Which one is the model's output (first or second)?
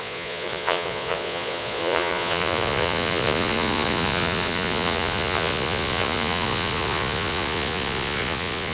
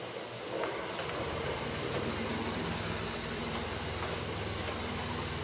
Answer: first